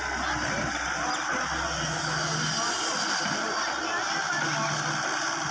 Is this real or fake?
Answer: real